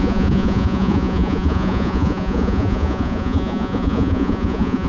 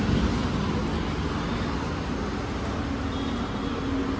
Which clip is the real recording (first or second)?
second